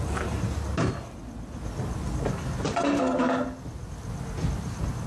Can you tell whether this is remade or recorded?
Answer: recorded